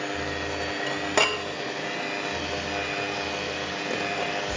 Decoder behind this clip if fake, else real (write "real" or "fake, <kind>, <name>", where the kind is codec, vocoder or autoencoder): real